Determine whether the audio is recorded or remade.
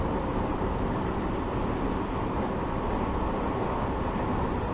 recorded